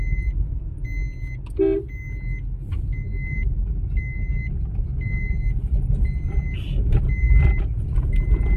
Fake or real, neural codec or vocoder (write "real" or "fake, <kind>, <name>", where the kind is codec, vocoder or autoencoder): real